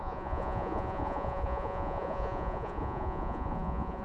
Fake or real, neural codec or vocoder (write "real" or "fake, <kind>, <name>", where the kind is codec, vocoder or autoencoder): fake, vocoder, Vocos